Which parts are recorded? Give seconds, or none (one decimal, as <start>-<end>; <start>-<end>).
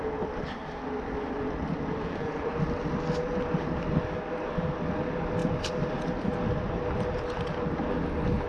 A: 0.0-2.0; 2.5-8.5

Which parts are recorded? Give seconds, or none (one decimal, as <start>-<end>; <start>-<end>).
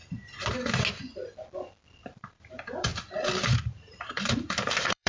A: 0.0-2.0; 2.9-3.6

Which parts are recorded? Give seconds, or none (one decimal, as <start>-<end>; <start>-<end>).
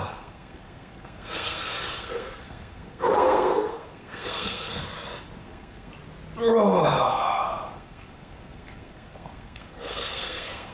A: 4.8-5.4; 5.9-6.8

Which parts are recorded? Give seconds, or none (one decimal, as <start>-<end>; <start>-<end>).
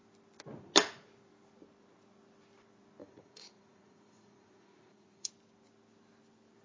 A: 0.0-3.0; 5.3-6.6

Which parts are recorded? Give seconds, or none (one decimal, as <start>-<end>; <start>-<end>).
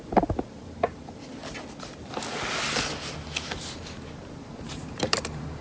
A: 0.0-0.5; 1.4-4.7